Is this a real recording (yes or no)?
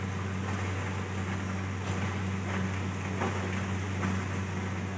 yes